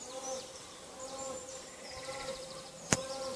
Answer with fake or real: fake